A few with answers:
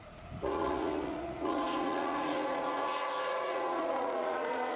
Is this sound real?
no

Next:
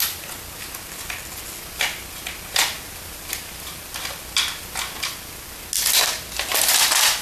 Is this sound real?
yes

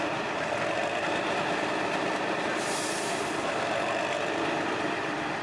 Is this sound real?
yes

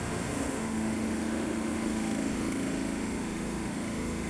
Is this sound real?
no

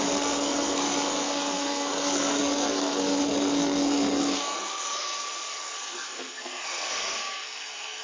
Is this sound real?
no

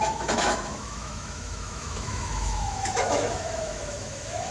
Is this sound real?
no